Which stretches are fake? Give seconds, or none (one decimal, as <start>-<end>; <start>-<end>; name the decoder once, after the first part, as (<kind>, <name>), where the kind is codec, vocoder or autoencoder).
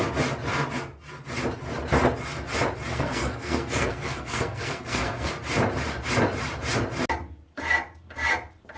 2.9-5.3 (codec, SNAC)